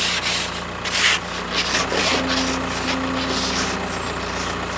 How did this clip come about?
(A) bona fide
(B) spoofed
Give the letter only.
A